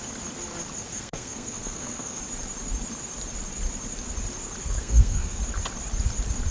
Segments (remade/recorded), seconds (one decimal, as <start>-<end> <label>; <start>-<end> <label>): 0.0-0.9 recorded; 0.9-2.2 remade; 2.2-4.6 recorded; 4.6-5.4 remade; 5.4-6.5 recorded